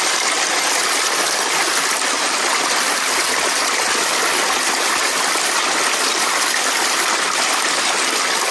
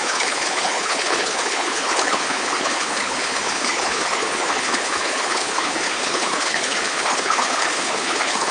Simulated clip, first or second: second